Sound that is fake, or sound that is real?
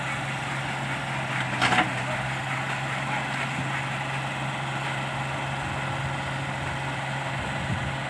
real